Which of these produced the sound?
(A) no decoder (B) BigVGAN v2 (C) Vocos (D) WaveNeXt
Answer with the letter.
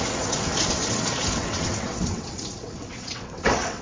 D